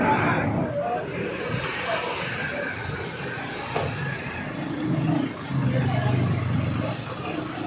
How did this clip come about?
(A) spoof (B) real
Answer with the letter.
B